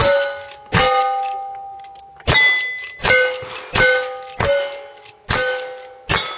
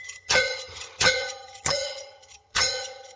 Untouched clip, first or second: first